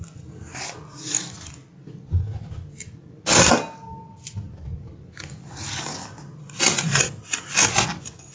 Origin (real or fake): real